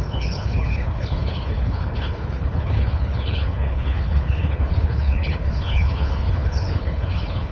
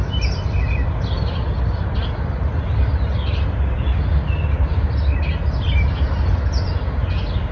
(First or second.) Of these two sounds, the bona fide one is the second